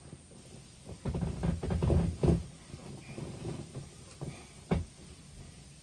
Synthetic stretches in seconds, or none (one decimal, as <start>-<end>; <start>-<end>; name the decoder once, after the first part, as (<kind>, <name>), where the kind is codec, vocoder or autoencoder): none